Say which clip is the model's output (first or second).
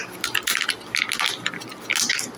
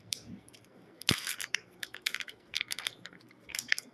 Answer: second